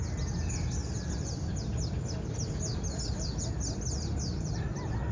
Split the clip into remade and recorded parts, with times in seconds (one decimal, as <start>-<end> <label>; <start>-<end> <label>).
0.0-5.1 recorded